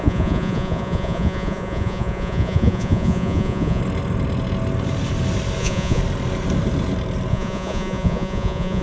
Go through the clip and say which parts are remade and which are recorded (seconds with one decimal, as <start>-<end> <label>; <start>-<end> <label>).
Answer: 0.0-3.8 remade; 3.8-5.6 recorded; 5.6-6.0 remade; 6.0-7.3 recorded; 7.3-8.8 remade